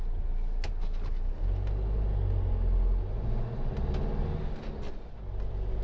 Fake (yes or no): no